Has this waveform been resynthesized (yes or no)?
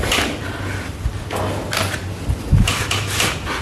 no